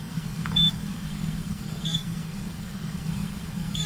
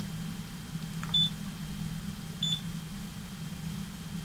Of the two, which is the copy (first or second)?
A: first